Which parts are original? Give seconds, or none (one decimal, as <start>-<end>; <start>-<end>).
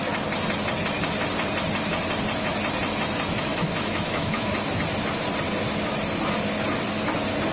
0.0-3.5; 4.5-7.5